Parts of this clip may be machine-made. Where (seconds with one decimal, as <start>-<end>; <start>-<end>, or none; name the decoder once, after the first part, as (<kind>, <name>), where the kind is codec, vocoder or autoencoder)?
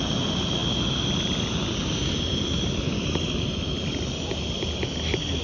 none